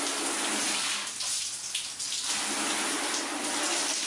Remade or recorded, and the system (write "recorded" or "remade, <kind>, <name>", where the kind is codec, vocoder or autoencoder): recorded